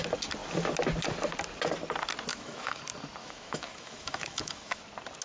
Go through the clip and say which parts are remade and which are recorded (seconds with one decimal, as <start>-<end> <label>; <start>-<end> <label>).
0.0-2.3 recorded; 2.3-2.8 remade; 2.8-3.2 recorded; 3.2-4.8 remade; 4.8-5.2 recorded